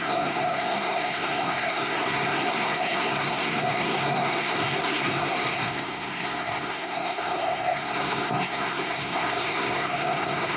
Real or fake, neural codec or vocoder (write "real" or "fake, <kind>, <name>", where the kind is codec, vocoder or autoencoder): fake, codec, SNAC